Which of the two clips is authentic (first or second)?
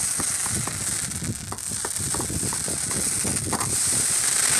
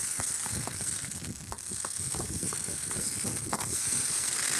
first